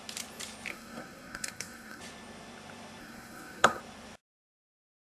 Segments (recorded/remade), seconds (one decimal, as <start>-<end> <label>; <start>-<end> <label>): 0.0-0.7 recorded; 0.7-2.0 remade; 2.0-3.0 recorded; 3.0-3.8 remade; 3.8-5.1 recorded